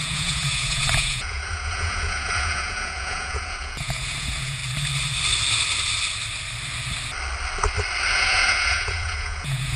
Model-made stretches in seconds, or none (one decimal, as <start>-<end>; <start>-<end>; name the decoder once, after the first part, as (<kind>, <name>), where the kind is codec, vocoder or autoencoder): 0.0-4.6 (vocoder, Vocos); 8.1-9.8